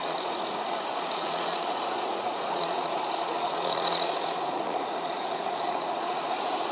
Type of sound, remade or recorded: remade